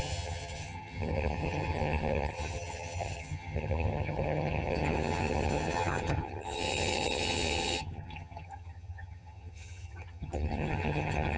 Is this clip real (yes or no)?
no